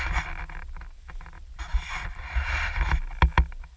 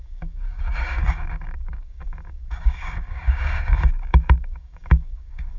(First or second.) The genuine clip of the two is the first